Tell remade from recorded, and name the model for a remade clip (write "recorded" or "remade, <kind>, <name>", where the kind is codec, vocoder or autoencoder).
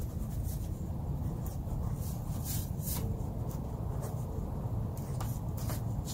recorded